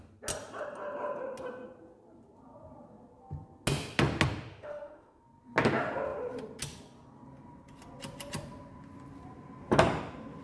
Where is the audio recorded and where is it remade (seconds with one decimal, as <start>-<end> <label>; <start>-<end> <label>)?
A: 0.0-4.5 recorded; 4.5-5.2 remade; 5.2-10.4 recorded